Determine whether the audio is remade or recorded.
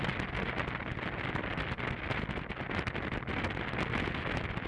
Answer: recorded